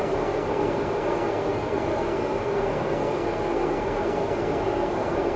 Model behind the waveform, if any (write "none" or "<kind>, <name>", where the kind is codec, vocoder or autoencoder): codec, SNAC